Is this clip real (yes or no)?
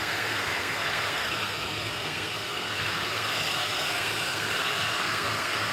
no